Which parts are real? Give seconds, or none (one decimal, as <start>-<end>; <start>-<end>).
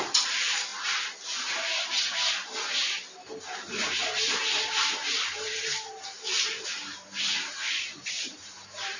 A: 0.7-3.4